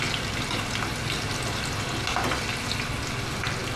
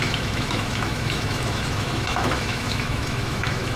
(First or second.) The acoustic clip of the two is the first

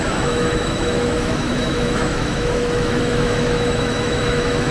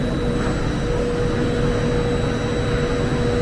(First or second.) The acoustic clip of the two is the second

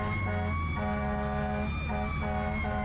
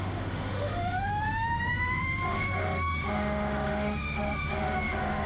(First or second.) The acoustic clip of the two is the first